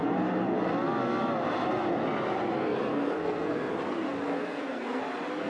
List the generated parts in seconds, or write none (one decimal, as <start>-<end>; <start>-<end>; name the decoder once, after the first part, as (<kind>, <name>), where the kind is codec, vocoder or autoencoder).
2.9-3.7 (codec, SNAC); 4.3-5.0